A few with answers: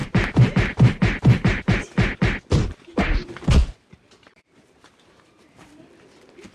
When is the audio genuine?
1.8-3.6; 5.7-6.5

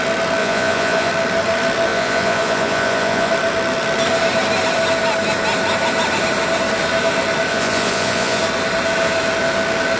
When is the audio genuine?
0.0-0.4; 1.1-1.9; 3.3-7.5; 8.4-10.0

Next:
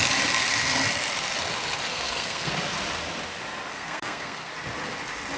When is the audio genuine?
0.0-1.9; 2.5-3.7; 4.5-5.4